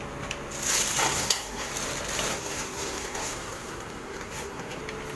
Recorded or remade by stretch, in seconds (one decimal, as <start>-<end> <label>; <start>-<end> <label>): 0.0-1.1 recorded; 1.1-1.7 remade; 1.7-2.3 recorded; 2.3-4.8 remade; 4.8-5.2 recorded

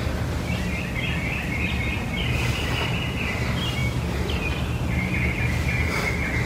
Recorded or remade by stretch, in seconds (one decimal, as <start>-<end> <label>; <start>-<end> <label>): 0.0-6.5 recorded